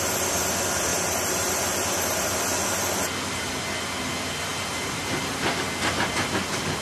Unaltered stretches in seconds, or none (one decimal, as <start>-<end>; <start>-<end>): 0.0-0.9; 2.3-4.5; 5.4-6.8